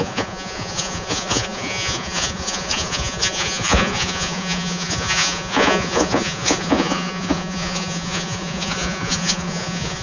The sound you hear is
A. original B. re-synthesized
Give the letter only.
B